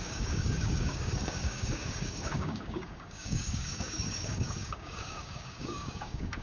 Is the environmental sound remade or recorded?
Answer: remade